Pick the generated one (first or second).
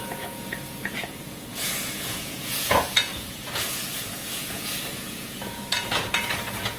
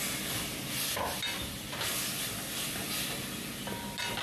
first